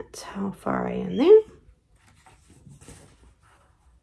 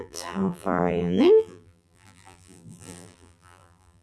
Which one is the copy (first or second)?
second